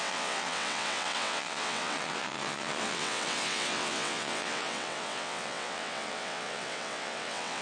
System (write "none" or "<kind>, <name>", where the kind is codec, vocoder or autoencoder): vocoder, WaveNeXt